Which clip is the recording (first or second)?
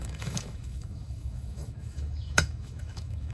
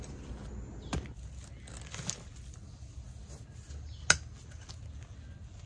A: second